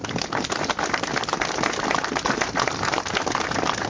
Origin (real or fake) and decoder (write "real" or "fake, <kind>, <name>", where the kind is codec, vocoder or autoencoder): real